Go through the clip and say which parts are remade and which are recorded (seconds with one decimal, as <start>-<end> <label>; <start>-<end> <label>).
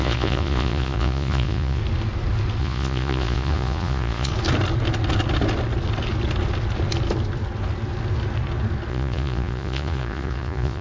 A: 0.0-1.8 remade; 1.8-2.6 recorded; 2.6-4.3 remade; 4.3-8.9 recorded; 8.9-10.8 remade